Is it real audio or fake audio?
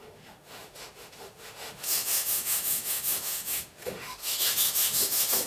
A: fake